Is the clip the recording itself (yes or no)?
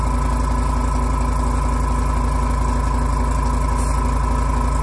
yes